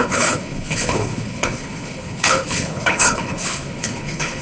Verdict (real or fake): fake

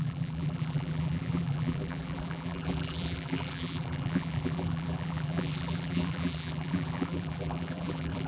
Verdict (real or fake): fake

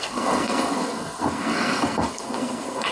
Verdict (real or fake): fake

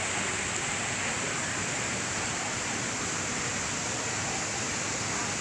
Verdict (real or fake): real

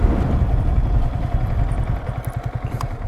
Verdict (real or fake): real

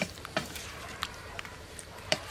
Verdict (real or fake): fake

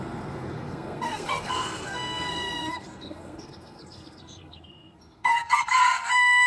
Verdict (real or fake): fake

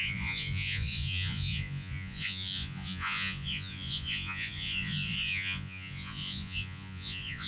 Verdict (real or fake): fake